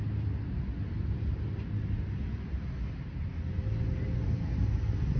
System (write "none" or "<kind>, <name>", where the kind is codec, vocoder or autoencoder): none